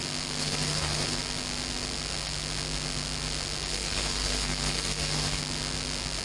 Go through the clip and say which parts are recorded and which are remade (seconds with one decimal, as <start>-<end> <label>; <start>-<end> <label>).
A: 0.0-0.4 recorded; 0.4-1.2 remade; 1.2-3.7 recorded; 3.7-5.4 remade; 5.4-6.2 recorded